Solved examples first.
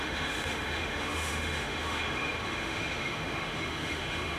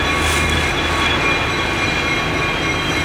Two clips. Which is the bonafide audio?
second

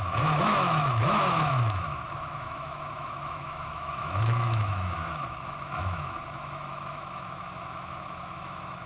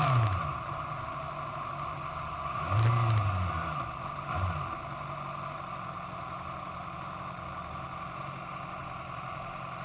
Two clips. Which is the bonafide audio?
second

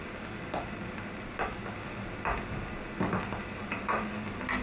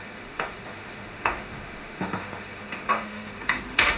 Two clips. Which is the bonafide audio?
first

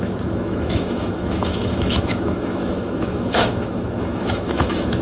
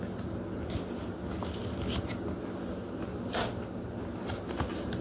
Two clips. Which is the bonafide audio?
second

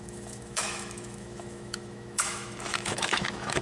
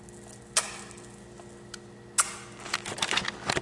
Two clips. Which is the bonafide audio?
second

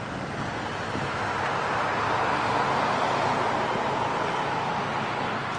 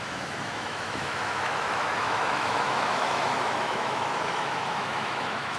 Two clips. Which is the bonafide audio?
first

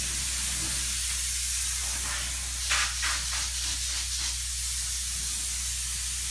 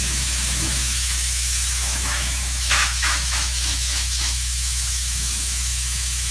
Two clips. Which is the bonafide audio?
first